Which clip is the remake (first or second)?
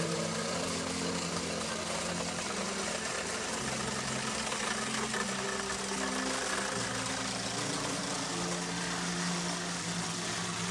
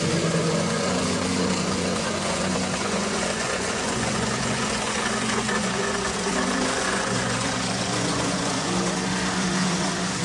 second